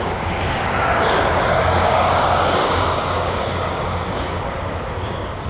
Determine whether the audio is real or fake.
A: fake